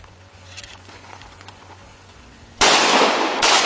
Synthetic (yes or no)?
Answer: yes